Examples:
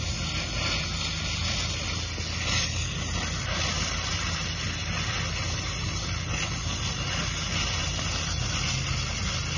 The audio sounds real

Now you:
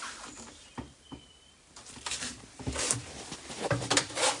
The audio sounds fake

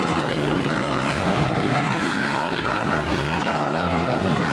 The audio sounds fake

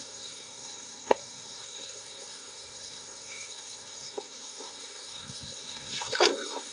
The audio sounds fake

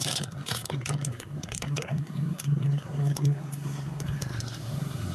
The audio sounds fake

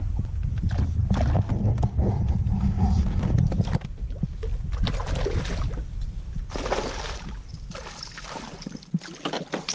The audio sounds real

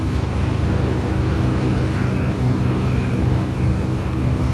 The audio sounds fake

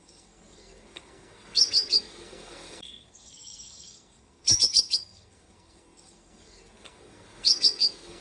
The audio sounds fake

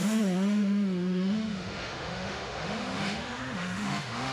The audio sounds fake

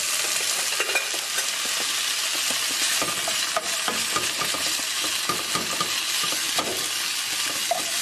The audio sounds real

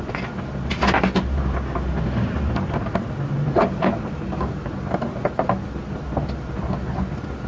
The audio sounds real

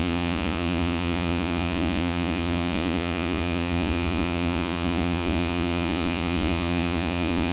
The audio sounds fake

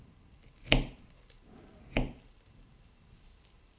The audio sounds real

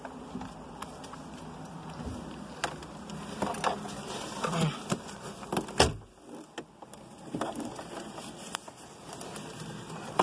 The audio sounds real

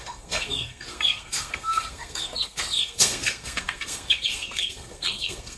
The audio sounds fake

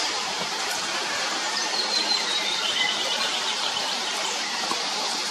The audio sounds fake